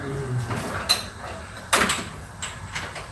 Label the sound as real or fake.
real